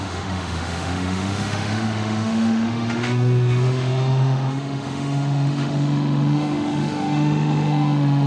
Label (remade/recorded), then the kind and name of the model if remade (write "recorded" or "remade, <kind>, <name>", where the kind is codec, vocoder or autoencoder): remade, autoencoder, DAC-VAE